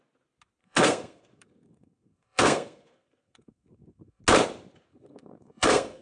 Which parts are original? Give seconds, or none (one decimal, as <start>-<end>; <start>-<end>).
0.0-0.6; 4.2-4.9